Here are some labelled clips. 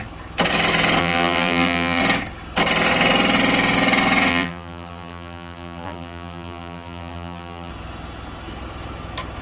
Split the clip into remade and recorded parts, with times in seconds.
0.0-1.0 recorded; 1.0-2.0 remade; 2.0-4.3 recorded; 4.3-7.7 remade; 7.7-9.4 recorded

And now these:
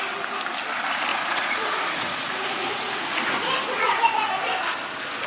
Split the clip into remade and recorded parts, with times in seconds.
0.0-1.1 recorded; 1.1-4.3 remade; 4.3-5.3 recorded

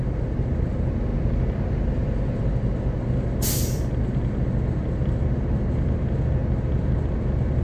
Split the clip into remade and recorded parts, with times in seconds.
0.0-7.6 recorded

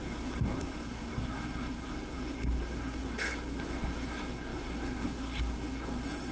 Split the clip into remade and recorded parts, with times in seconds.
0.0-6.3 remade

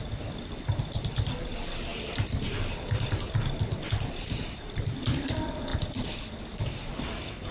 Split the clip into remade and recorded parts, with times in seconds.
0.0-1.9 recorded; 1.9-5.3 remade; 5.3-5.7 recorded; 5.7-7.0 remade; 7.0-7.5 recorded

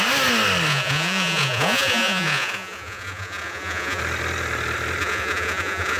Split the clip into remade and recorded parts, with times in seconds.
0.0-0.7 recorded; 0.7-4.0 remade; 4.0-5.0 recorded; 5.0-6.0 remade

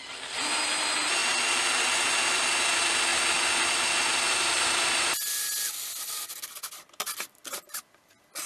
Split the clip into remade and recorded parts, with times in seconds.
0.0-8.5 recorded

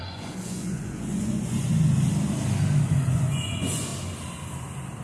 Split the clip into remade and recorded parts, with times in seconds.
0.0-1.7 remade; 1.7-2.9 recorded; 2.9-3.9 remade; 3.9-5.0 recorded